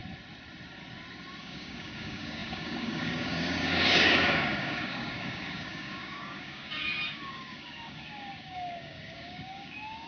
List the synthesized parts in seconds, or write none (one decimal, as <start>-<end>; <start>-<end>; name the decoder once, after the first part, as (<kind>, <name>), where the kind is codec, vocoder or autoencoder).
1.4-10.1 (codec, DAC)